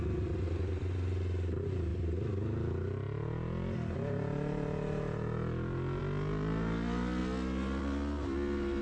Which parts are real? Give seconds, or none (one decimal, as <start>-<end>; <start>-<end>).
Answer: 0.0-8.8